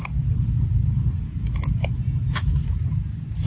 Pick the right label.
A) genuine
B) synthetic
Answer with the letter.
A